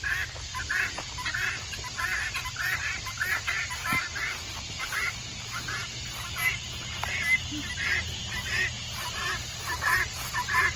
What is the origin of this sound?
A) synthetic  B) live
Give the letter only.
B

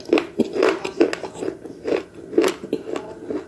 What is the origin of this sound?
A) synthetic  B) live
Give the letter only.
B